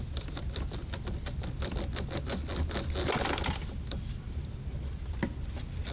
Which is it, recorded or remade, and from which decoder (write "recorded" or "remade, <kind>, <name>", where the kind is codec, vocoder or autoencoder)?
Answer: recorded